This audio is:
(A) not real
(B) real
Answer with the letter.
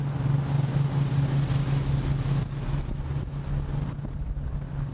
B